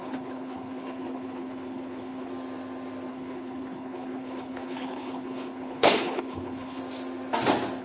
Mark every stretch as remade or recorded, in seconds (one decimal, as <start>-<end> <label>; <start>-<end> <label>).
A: 0.0-2.3 remade; 2.3-3.1 recorded; 3.1-6.8 remade; 6.8-7.8 recorded